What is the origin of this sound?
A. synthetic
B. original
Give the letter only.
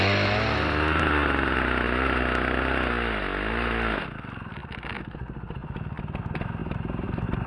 B